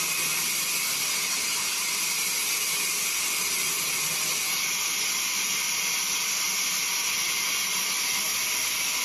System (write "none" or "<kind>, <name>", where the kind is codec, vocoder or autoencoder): none